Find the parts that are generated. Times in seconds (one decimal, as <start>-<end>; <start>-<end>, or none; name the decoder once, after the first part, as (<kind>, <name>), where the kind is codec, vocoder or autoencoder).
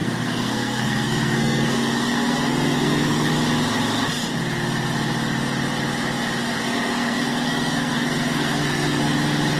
0.0-3.3 (codec, SNAC); 6.6-9.0